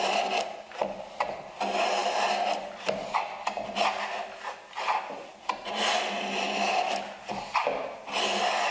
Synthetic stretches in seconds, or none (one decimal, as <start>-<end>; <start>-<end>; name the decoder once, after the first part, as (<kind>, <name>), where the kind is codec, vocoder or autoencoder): none